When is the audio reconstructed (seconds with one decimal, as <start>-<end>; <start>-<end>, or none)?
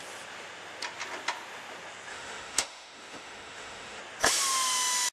2.1-4.0